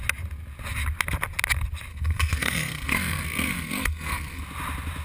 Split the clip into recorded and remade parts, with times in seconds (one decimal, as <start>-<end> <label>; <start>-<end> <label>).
0.0-1.9 recorded; 1.9-4.4 remade; 4.4-5.0 recorded